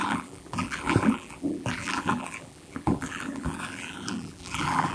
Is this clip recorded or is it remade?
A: remade